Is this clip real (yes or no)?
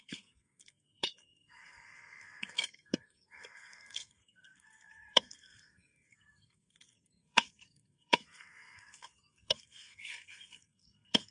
no